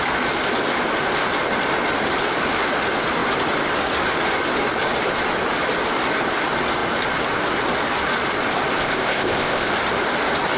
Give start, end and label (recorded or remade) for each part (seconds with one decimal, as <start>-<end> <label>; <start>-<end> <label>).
0.0-8.8 recorded; 8.8-9.7 remade; 9.7-10.6 recorded